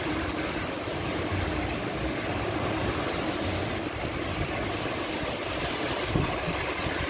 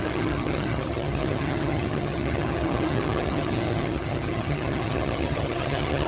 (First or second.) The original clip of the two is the first